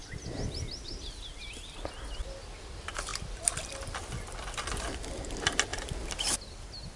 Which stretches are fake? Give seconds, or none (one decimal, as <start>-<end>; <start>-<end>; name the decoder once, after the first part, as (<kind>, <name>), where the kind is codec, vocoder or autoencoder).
none